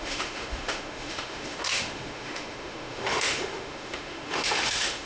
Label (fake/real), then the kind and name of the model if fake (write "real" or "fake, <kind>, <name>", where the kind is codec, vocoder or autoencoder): fake, autoencoder, DAC-VAE